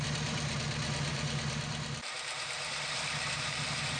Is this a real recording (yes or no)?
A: no